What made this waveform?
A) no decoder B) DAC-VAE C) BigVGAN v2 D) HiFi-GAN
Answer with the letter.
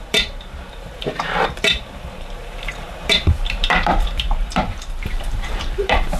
C